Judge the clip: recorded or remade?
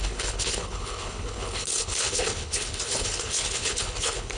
remade